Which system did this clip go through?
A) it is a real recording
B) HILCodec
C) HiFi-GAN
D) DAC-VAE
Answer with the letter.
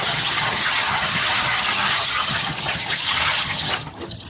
C